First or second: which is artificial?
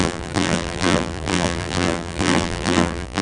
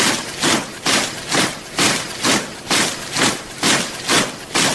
first